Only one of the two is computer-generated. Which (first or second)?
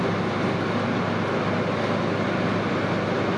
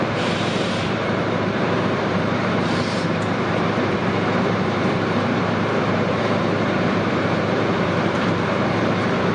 second